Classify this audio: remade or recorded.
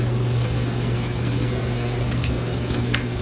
remade